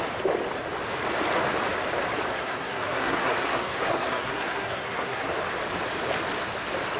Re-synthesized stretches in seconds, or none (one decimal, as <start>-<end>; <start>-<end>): 2.3-5.3